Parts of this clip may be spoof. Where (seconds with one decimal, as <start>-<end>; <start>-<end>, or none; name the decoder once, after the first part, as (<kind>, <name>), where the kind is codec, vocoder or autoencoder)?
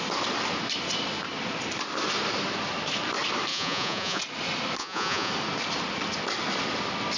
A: 3.5-4.2 (vocoder, Vocos); 4.8-5.3